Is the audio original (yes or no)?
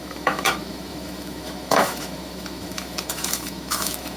no